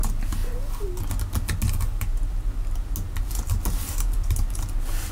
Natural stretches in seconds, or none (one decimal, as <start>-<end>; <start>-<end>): 0.0-5.1